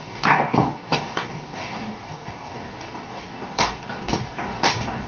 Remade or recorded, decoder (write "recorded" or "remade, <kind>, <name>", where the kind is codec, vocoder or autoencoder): remade, codec, DAC